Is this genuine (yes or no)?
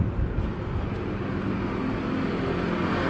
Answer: yes